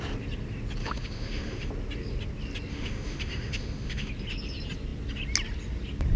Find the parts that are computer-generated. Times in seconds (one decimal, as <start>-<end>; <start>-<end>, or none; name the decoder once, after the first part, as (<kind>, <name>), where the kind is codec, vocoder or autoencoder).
0.8-1.7 (autoencoder, DAC-VAE); 2.7-4.1